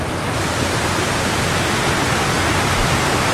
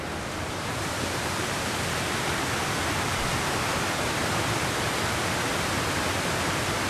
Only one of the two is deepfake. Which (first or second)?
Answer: second